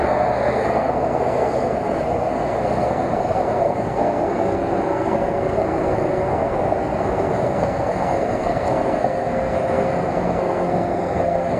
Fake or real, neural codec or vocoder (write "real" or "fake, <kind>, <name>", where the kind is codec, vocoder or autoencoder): fake, codec, SNAC